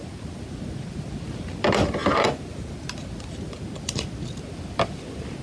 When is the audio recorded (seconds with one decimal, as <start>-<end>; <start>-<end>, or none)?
0.0-5.4